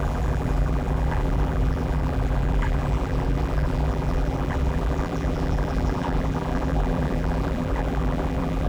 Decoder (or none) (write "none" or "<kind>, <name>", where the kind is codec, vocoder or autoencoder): vocoder, BigVGAN v2